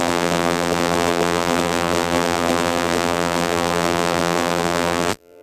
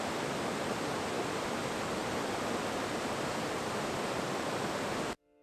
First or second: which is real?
second